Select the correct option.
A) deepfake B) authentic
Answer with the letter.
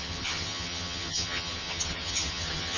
A